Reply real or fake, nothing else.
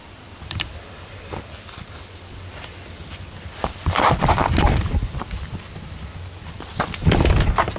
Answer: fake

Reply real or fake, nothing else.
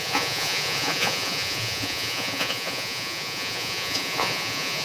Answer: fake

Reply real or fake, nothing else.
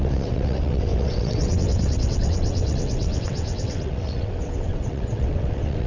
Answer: fake